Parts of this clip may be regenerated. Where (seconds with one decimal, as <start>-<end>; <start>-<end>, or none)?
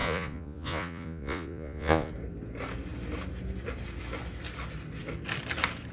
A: 0.0-2.1